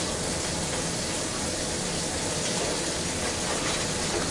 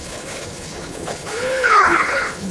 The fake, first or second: second